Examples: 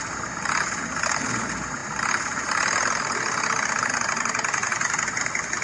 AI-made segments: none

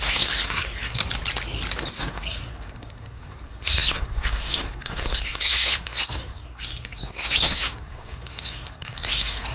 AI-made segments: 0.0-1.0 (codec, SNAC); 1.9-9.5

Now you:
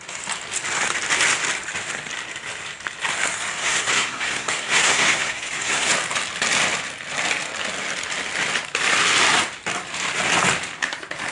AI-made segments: 3.6-5.9 (codec, SNAC)